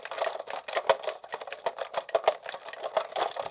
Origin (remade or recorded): recorded